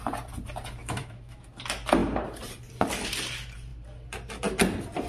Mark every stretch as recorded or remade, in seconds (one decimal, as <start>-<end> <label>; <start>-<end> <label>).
0.0-0.8 recorded; 0.8-1.4 remade; 1.4-5.1 recorded